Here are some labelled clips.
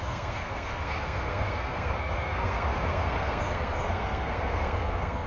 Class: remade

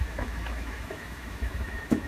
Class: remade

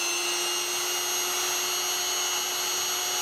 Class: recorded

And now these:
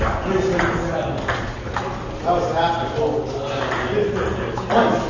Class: recorded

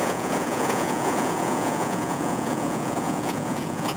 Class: remade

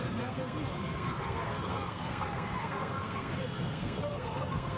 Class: remade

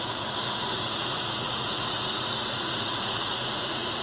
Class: remade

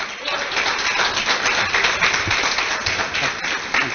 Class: recorded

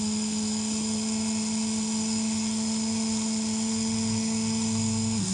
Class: recorded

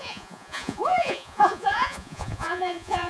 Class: remade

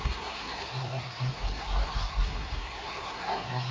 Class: remade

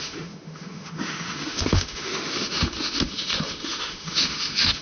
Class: remade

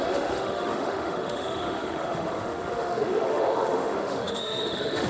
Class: remade